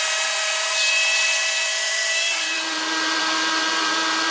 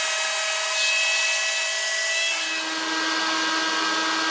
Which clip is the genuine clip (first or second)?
second